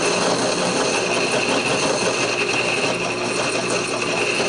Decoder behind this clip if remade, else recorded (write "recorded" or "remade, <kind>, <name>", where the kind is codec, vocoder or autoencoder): recorded